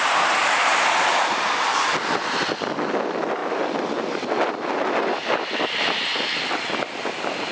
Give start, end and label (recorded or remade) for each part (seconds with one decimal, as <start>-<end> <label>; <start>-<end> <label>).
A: 0.0-3.4 recorded; 3.4-4.9 remade; 4.9-7.5 recorded